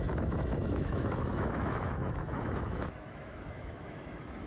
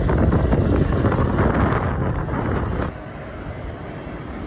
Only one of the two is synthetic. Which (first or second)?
first